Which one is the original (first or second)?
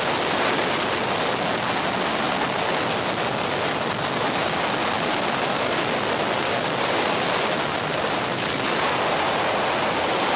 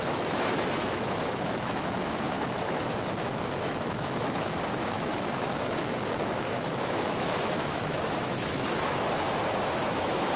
first